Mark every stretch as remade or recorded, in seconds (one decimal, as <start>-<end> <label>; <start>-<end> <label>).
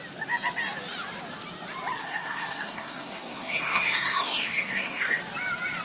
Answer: 0.0-2.0 recorded; 2.0-5.2 remade; 5.2-5.8 recorded